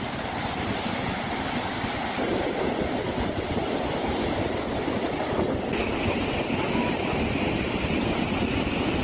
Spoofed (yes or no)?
no